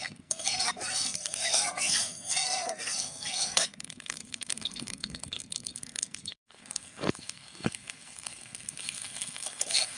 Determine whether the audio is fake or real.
fake